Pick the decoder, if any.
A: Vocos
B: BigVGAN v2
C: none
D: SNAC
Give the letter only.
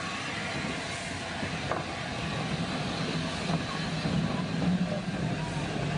C